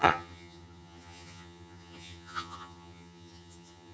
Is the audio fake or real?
fake